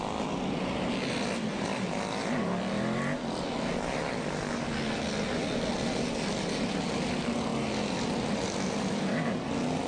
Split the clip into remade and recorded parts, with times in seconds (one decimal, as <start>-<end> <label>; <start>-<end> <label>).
0.0-9.9 recorded